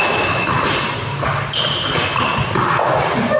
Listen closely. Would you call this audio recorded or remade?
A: recorded